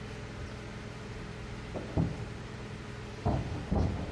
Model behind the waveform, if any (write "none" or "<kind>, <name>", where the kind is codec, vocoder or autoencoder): none